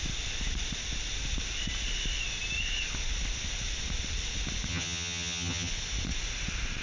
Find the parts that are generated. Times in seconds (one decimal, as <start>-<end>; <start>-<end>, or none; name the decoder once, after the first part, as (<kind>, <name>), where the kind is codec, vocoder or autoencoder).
4.7-5.7 (vocoder, HiFi-GAN)